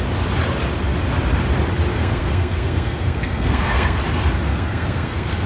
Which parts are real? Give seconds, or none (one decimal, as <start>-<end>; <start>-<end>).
0.0-1.9; 4.0-4.5